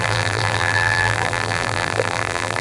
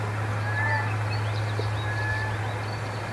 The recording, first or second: second